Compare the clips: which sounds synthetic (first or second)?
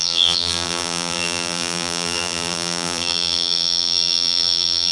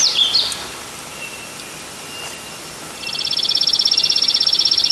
first